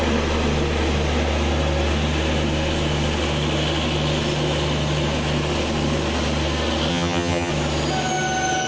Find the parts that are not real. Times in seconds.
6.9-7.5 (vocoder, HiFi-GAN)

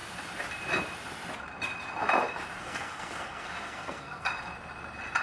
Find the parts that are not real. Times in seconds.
2.6-4.3 (codec, SNAC)

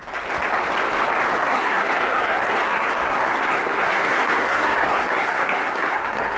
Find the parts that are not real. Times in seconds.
1.4-6.4 (codec, SNAC)

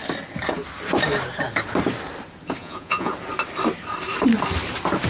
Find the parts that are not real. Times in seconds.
2.6-3.1 (vocoder, Vocos)

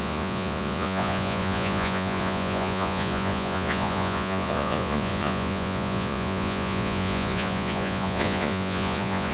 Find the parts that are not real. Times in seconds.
0.0-9.3 (vocoder, Vocos)